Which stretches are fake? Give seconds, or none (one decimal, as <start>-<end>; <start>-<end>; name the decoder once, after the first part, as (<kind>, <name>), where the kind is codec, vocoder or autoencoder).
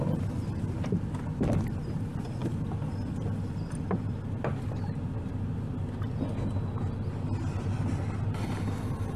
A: none